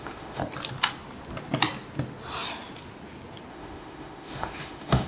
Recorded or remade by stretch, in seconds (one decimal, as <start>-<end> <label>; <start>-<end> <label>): 0.0-0.4 remade; 0.4-3.5 recorded; 3.5-5.1 remade